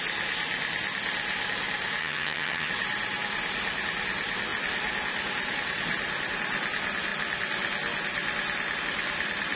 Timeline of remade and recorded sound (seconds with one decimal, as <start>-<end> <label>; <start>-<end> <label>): 0.0-2.0 recorded; 2.0-2.7 remade; 2.7-9.6 recorded